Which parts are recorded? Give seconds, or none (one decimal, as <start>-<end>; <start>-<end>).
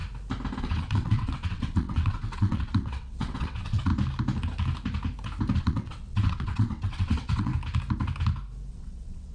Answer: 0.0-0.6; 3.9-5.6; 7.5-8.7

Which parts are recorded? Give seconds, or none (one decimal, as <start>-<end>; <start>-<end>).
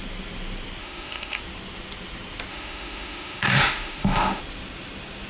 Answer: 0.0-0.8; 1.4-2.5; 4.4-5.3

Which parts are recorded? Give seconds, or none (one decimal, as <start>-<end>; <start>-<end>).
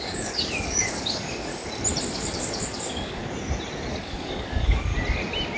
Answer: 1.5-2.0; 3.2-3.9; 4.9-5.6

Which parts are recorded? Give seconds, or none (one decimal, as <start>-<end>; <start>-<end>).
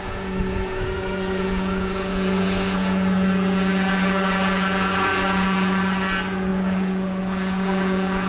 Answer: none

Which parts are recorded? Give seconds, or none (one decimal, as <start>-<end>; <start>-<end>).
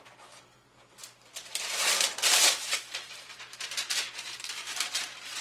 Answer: 0.0-1.0; 4.1-4.6